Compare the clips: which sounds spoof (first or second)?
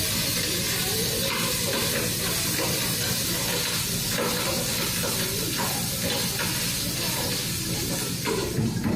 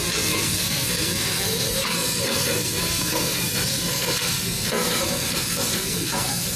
second